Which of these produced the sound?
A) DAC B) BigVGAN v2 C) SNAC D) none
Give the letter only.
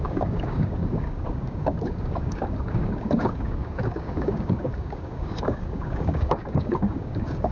A